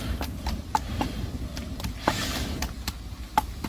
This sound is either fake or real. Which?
real